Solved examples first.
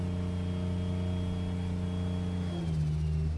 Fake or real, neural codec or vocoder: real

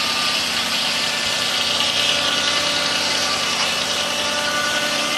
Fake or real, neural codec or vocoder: real